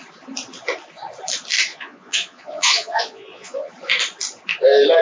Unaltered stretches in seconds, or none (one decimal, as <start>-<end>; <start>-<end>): 0.0-1.7; 3.7-5.0

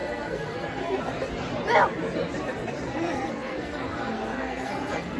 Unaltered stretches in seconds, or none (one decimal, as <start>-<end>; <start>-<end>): 1.0-2.9

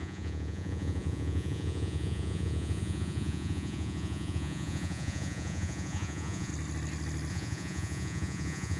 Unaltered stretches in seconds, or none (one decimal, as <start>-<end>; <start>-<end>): 6.5-7.3

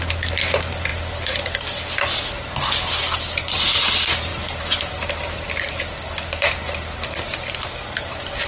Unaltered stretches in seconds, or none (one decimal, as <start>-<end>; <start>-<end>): 0.0-8.5

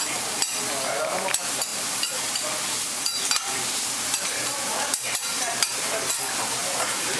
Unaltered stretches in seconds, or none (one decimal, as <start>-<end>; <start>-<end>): 0.0-1.7; 6.0-6.6

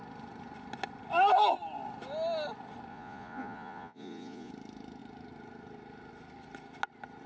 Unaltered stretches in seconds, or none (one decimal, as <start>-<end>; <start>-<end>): 0.0-2.9; 4.5-7.3

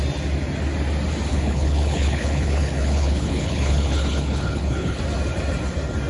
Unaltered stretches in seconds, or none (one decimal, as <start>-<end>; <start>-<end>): 0.0-1.3; 5.0-6.1

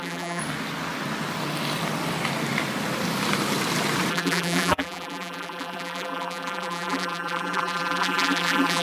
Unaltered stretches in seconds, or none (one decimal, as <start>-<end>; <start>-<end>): 0.4-4.1